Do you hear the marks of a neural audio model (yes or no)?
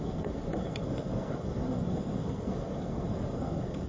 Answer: yes